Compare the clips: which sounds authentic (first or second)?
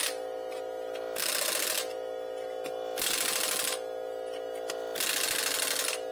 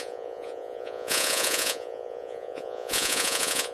first